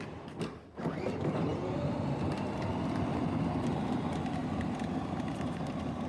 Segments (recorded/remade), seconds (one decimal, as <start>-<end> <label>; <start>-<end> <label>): 0.0-4.4 recorded; 4.4-6.1 remade